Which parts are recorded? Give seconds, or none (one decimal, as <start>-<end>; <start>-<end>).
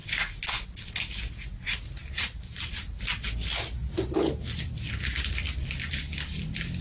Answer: 0.0-6.8